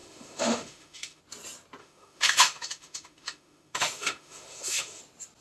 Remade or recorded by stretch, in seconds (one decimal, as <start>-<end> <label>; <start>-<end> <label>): 0.0-1.2 remade; 1.2-1.8 recorded; 1.8-5.0 remade; 5.0-5.4 recorded